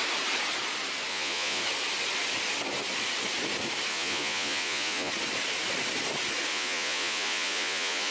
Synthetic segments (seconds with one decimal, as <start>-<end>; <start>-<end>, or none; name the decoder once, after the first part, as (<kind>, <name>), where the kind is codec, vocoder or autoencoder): 1.1-1.6 (vocoder, Vocos); 3.9-5.1; 6.5-8.1